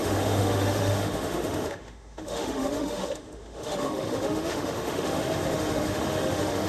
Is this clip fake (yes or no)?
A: yes